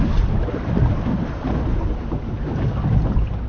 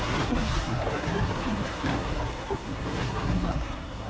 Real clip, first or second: first